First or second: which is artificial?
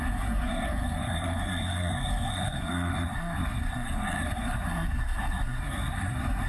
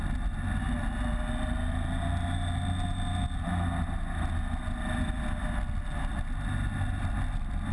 first